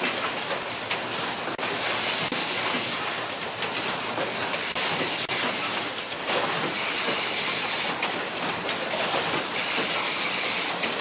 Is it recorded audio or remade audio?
recorded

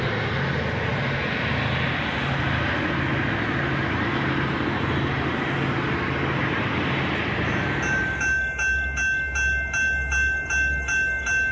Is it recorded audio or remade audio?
recorded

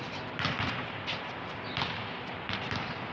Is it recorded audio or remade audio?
recorded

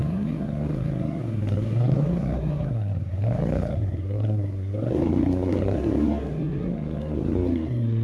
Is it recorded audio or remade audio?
remade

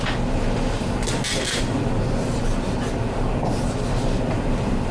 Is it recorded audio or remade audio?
recorded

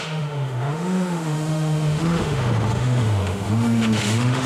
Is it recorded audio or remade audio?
remade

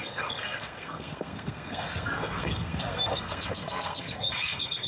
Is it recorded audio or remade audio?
remade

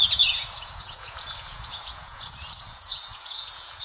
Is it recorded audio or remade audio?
remade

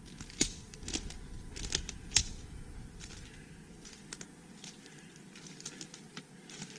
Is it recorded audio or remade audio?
recorded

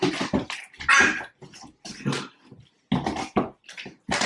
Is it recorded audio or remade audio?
recorded